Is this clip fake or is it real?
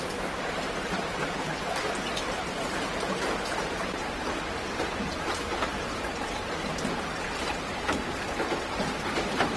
fake